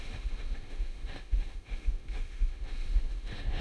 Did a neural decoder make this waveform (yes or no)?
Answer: yes